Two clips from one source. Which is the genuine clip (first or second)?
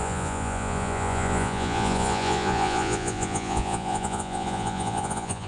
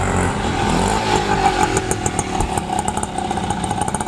second